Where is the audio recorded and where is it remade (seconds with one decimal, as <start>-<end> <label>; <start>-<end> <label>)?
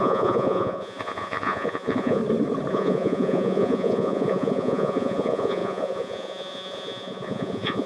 0.0-2.2 remade; 2.2-2.7 recorded; 2.7-7.9 remade